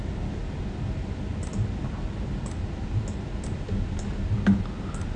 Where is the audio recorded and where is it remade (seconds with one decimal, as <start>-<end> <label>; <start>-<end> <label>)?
0.0-5.2 recorded